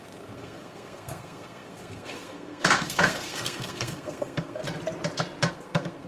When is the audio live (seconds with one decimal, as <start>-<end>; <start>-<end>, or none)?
4.6-5.5

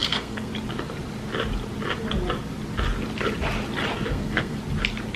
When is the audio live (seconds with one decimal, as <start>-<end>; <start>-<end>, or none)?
0.5-4.1; 4.6-5.2

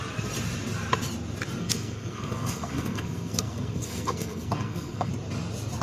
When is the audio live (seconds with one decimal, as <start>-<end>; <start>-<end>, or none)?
0.0-1.6; 5.1-5.8

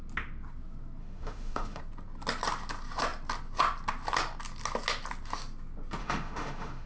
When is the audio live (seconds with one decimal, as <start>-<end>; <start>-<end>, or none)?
0.0-1.0; 1.8-6.0

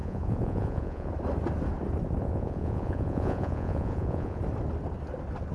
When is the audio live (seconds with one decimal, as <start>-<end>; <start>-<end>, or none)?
1.1-2.2; 4.4-5.5

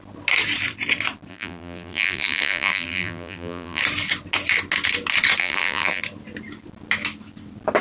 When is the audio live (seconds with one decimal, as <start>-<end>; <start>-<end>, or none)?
0.0-1.3; 3.8-5.4; 6.0-7.8